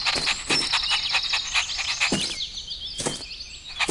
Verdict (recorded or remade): recorded